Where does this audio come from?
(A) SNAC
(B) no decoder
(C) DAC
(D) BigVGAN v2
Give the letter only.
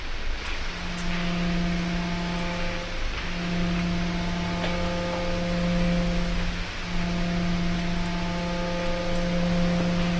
B